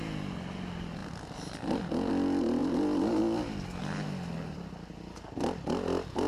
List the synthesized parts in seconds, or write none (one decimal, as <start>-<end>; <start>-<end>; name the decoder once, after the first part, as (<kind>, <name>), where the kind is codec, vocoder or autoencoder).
none